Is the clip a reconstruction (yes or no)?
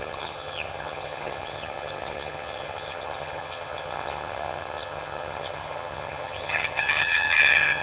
yes